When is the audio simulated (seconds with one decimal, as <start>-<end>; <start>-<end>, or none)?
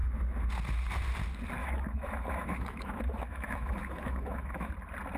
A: 1.6-4.7